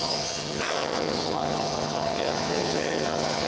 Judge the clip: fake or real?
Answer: fake